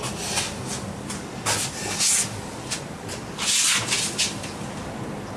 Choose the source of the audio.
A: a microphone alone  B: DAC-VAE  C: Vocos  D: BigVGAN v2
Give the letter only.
A